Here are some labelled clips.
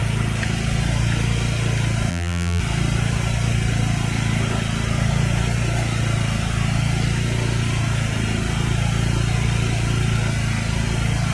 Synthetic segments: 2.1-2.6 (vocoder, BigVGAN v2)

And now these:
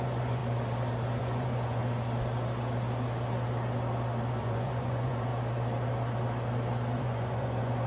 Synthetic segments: 0.0-0.4 (vocoder, Vocos); 1.2-1.8; 4.4-5.3; 7.0-7.9

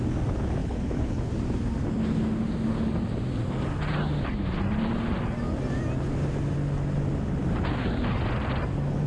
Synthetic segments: 0.6-1.3 (codec, HILCodec)